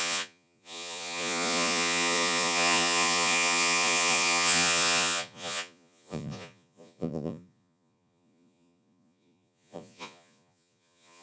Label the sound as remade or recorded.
remade